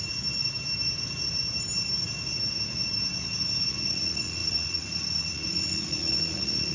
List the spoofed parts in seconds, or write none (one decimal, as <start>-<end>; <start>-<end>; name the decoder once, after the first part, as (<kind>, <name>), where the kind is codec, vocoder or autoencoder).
3.7-6.7 (vocoder, Vocos)